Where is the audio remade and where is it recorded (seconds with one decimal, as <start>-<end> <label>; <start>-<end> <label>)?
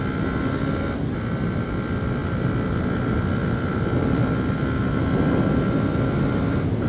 0.0-6.9 recorded